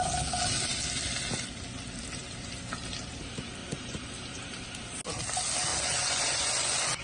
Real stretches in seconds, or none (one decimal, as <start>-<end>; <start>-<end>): 0.0-3.6; 4.1-5.7